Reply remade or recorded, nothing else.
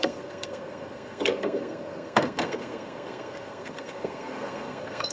remade